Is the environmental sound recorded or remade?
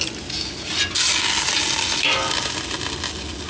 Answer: recorded